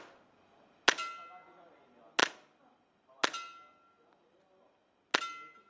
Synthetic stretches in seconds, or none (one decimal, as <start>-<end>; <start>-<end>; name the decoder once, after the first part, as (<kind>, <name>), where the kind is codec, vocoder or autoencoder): none